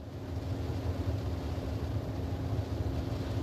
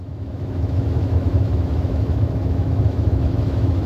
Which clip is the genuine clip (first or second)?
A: first